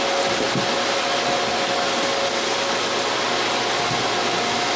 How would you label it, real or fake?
real